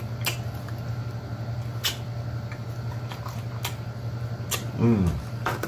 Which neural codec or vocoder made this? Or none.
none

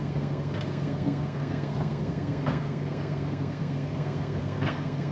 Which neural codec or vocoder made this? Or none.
codec, SNAC